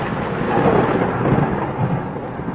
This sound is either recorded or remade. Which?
recorded